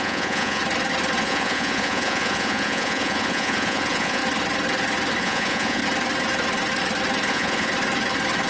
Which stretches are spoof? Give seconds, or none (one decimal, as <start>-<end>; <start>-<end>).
0.0-0.6; 1.2-4.2; 5.2-5.8; 7.3-7.7